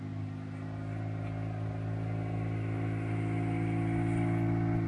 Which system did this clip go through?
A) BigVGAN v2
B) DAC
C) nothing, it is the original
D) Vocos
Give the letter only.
C